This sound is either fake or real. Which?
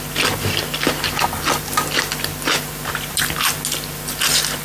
real